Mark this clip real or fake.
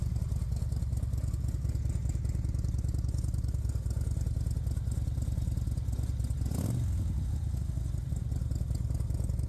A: real